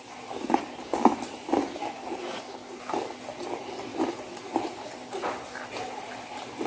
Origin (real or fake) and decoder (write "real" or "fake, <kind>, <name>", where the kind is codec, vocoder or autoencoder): real